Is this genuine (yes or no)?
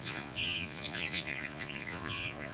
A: no